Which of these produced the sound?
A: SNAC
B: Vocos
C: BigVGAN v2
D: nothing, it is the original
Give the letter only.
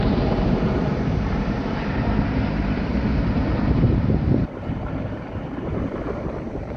C